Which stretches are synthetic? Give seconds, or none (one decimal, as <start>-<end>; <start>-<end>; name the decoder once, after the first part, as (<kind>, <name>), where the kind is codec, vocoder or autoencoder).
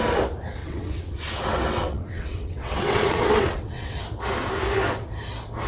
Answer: 0.6-4.0 (vocoder, WaveNeXt)